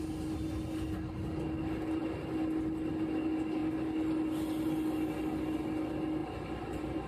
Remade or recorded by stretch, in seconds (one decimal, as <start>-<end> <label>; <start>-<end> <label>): 0.0-6.2 recorded; 6.2-7.1 remade

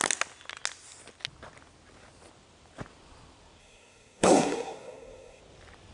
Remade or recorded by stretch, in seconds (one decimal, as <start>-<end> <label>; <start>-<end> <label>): 0.0-3.6 recorded; 3.6-5.4 remade; 5.4-5.9 recorded